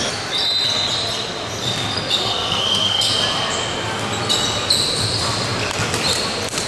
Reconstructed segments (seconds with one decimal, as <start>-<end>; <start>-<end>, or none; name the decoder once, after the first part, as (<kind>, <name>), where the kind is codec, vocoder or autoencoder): 2.2-3.1 (codec, SNAC)